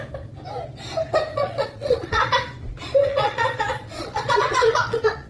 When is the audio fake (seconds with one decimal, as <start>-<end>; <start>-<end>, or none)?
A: 1.3-2.3; 3.0-5.3